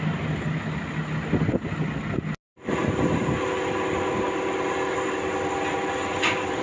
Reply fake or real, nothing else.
real